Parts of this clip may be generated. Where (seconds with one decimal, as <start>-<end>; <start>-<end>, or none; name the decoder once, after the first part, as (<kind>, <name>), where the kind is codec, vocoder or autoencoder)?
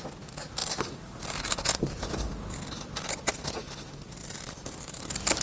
0.6-2.0 (vocoder, BigVGAN v2); 4.2-5.0